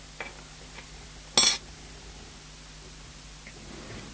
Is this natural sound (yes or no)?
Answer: yes